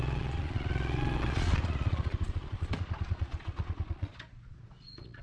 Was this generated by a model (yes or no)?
yes